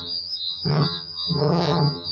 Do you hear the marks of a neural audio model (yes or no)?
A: yes